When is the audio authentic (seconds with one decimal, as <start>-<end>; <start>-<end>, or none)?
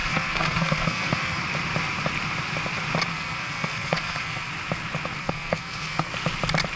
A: 1.4-3.1; 4.5-5.2; 6.1-6.8